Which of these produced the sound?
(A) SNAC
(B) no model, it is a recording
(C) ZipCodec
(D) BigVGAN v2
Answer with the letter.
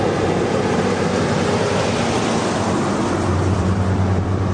D